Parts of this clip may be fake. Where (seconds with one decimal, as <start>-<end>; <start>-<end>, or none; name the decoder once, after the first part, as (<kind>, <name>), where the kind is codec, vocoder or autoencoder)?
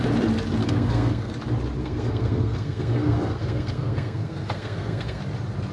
0.6-1.3 (codec, SNAC); 1.8-5.2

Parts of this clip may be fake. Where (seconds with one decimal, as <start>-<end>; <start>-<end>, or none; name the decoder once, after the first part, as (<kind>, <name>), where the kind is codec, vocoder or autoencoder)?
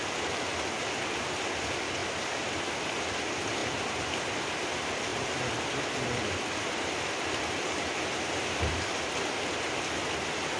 5.1-9.1 (vocoder, BigVGAN v2)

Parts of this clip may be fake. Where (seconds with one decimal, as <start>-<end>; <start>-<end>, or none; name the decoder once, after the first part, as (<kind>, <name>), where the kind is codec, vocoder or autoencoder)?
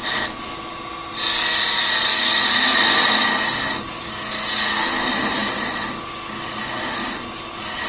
none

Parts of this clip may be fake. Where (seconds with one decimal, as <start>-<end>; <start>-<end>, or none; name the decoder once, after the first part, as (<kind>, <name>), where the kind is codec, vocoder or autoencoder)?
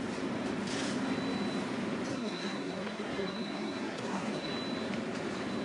2.1-4.5 (codec, SNAC)